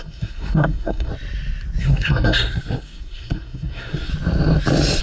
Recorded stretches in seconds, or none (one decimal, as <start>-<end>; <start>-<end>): 1.1-1.8; 4.1-5.0